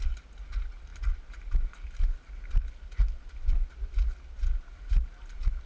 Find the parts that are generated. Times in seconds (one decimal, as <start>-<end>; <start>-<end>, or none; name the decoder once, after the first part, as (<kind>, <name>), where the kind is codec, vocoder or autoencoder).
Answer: none